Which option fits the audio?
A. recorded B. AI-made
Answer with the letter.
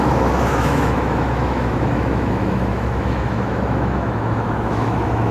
B